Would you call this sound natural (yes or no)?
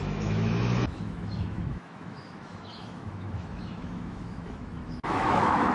no